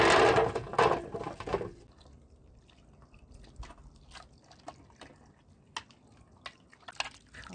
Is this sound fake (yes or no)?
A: no